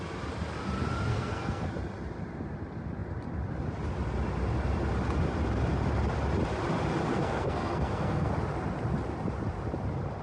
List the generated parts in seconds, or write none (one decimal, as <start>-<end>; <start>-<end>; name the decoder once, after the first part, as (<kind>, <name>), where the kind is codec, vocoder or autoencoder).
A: 1.1-1.7 (codec, SNAC); 7.1-8.3